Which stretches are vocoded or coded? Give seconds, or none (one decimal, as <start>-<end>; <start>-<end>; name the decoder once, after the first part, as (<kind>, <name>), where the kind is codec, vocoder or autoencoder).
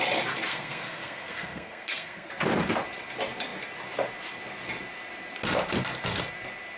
0.5-2.3 (codec, SNAC)